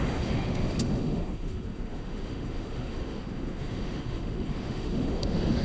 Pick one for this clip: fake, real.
fake